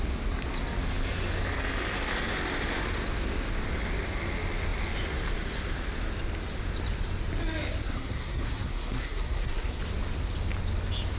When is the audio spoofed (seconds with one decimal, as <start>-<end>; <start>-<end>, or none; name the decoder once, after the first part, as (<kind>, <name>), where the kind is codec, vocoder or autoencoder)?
7.8-9.8 (codec, SNAC)